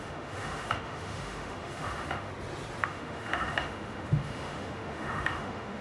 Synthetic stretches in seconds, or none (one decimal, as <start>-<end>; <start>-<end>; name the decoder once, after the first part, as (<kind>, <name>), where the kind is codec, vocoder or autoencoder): 0.0-2.3 (autoencoder, DAC-VAE); 2.8-5.8